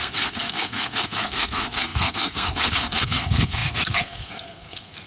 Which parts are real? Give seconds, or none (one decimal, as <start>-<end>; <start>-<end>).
none